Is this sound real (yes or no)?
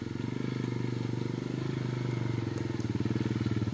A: yes